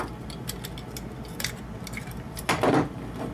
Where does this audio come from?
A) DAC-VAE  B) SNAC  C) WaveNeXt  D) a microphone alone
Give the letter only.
D